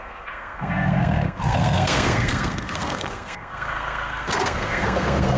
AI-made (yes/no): yes